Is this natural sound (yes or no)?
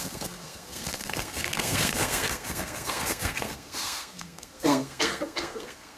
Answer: no